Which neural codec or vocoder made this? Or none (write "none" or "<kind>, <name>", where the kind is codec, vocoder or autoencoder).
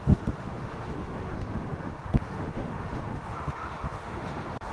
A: autoencoder, DAC-VAE